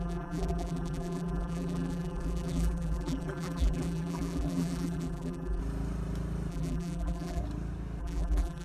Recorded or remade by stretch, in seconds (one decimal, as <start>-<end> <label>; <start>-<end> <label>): 0.0-5.6 remade; 5.6-6.5 recorded; 6.5-7.4 remade; 7.4-8.0 recorded; 8.0-8.6 remade